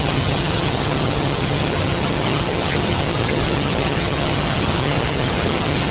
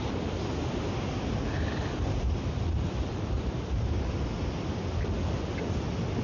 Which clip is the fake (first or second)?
first